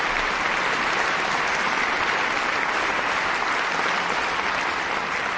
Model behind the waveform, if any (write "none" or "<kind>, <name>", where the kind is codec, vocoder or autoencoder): none